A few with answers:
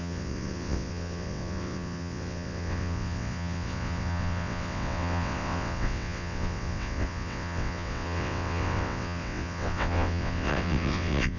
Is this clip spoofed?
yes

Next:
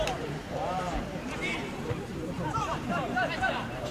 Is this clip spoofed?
yes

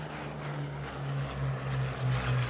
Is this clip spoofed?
no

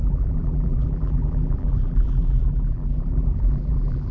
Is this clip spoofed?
yes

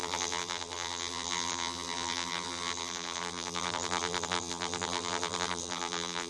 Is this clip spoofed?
yes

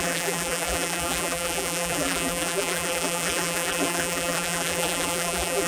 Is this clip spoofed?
yes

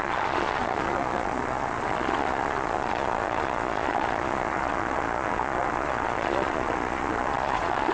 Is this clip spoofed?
yes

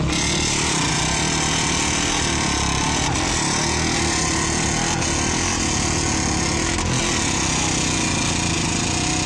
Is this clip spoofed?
no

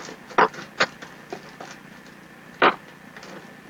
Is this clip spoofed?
no